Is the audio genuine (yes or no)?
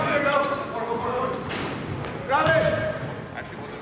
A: yes